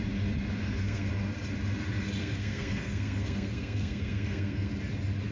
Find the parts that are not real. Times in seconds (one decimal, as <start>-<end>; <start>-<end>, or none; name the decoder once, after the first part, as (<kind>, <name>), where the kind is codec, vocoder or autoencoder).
0.6-1.1 (codec, SNAC); 2.2-4.7